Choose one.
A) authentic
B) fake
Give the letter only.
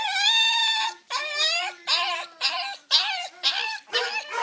B